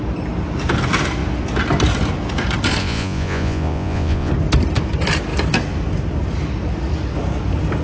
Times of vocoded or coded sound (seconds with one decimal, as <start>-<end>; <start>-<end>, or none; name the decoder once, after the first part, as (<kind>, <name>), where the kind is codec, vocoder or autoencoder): 2.8-4.3 (vocoder, Vocos)